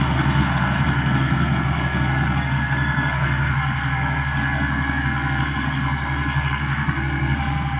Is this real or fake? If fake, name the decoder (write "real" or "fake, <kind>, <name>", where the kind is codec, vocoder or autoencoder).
fake, codec, SNAC